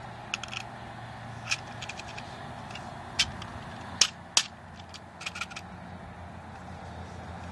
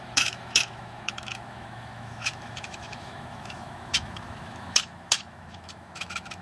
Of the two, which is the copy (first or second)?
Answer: second